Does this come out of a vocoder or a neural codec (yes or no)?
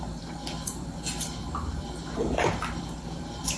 yes